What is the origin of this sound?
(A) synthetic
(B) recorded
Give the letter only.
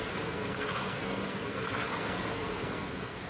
A